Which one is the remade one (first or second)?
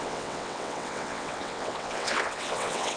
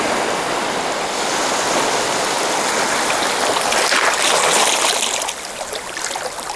first